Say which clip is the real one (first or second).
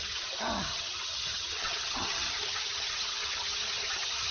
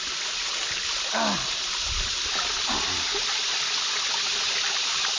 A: second